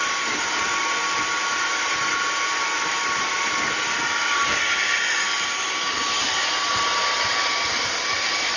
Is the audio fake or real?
real